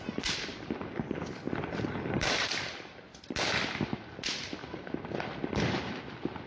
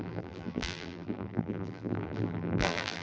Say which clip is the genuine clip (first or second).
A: first